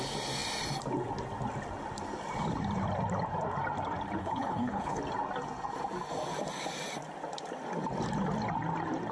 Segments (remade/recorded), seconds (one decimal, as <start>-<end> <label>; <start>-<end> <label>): 0.0-4.2 recorded; 4.2-5.0 remade; 5.0-9.1 recorded